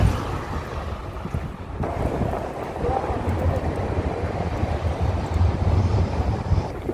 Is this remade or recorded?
recorded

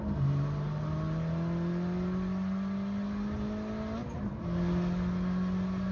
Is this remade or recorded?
recorded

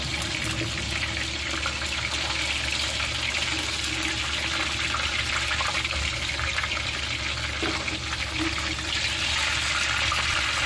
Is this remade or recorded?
recorded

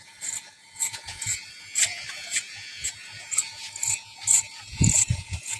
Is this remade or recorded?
remade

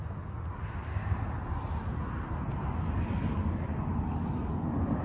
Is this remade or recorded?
recorded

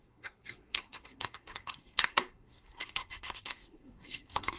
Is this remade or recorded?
remade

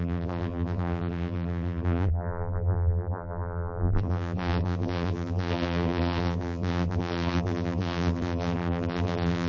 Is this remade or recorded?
remade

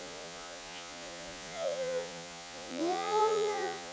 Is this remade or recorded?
remade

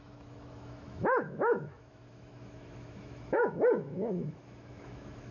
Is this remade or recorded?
remade